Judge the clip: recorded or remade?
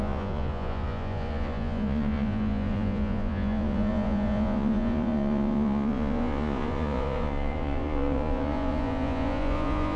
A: remade